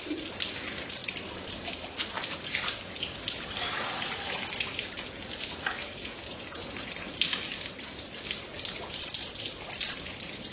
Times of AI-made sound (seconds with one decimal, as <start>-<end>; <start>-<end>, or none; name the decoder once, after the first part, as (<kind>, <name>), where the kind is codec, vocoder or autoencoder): 5.8-6.9 (vocoder, Vocos)